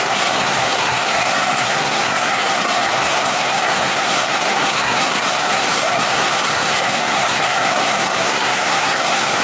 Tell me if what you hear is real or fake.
fake